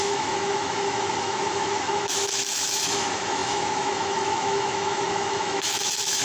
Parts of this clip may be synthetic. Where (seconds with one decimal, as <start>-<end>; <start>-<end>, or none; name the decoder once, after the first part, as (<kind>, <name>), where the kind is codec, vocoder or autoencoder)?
0.0-6.2 (autoencoder, DAC-VAE)